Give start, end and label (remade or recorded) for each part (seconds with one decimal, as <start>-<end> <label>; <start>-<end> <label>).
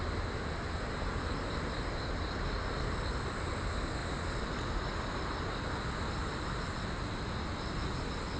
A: 0.0-8.4 recorded